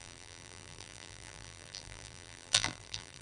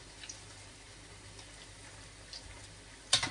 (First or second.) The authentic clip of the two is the second